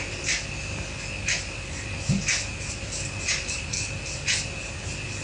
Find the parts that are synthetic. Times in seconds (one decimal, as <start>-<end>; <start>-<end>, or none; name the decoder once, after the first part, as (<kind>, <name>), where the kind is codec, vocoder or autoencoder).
none